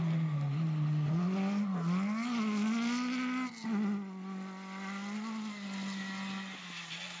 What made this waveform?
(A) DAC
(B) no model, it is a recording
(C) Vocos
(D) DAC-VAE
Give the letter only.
B